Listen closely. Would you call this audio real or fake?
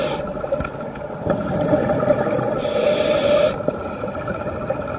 fake